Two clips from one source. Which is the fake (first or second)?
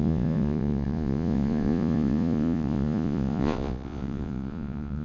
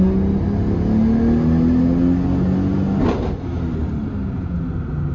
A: first